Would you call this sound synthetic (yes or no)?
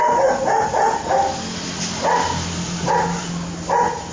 no